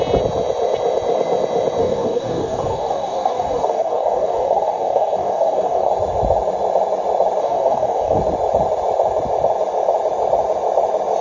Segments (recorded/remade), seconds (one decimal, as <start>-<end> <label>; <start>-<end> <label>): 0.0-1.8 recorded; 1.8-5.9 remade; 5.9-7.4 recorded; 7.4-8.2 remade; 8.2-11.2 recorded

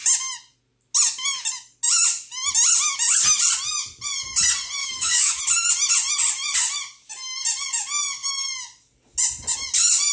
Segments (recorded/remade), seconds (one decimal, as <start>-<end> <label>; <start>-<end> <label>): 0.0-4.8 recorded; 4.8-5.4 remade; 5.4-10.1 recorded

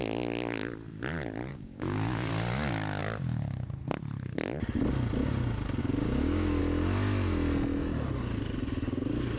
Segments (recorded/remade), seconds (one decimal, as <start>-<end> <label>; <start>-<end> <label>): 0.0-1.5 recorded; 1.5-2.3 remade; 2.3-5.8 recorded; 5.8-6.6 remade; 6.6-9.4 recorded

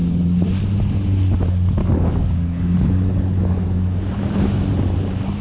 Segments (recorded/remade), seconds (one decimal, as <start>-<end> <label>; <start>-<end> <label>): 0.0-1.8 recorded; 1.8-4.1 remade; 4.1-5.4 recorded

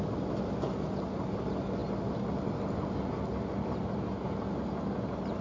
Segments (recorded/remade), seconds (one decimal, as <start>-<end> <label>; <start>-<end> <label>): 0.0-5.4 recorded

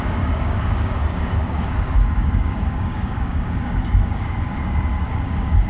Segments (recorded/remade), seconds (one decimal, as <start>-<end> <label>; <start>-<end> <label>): 0.0-5.7 remade

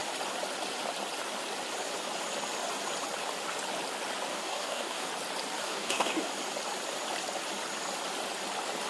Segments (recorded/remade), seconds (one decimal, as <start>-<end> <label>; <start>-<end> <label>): 0.0-4.3 recorded; 4.3-5.1 remade; 5.1-5.5 recorded; 5.5-6.3 remade; 6.3-8.9 recorded